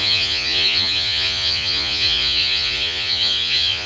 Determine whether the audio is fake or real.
fake